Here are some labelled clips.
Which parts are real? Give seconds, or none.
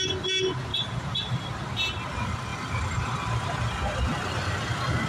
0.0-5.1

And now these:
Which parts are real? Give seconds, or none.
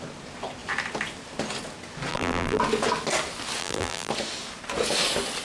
0.0-2.1; 2.6-3.6; 4.1-5.4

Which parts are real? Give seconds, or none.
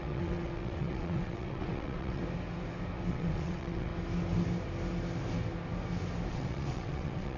2.2-3.1; 3.9-6.3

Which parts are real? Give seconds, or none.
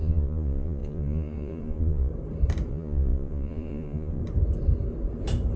2.1-2.7; 4.2-5.6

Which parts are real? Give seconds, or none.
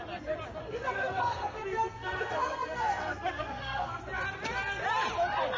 0.0-0.6; 4.0-5.6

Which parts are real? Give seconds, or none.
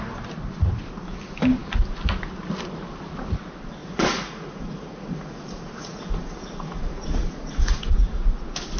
0.0-3.8; 8.2-8.8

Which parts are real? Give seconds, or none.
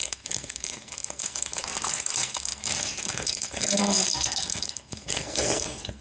none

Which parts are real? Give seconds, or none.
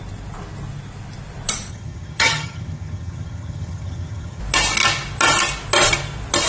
0.0-1.7; 4.4-6.5